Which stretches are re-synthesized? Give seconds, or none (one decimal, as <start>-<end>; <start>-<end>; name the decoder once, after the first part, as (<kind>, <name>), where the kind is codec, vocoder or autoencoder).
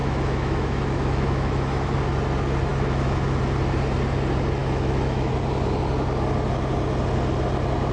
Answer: 0.0-2.0 (autoencoder, DAC-VAE); 2.7-3.4; 4.6-5.3